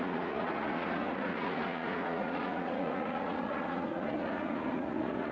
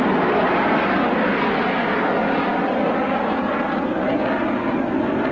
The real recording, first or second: second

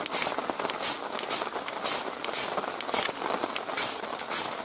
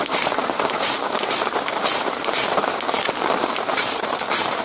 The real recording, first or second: first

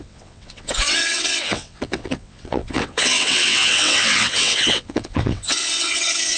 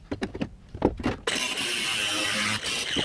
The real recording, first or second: second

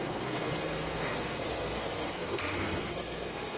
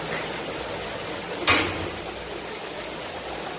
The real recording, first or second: second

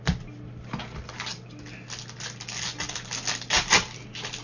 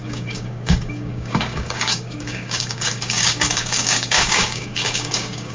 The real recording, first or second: first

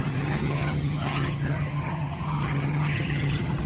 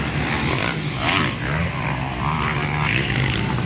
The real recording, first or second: second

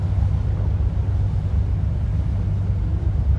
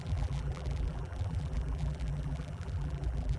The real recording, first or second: first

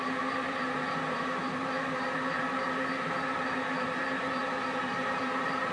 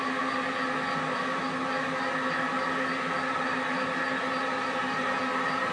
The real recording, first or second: second